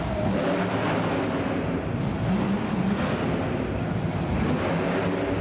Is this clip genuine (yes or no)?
yes